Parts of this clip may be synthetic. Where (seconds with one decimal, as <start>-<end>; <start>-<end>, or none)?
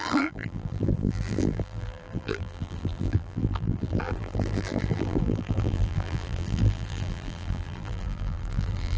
0.0-9.0